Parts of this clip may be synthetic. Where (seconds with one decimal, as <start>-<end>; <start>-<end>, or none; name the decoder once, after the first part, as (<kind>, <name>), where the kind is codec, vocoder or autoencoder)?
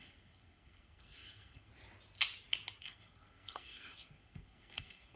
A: 0.0-1.7 (codec, SNAC); 2.8-5.2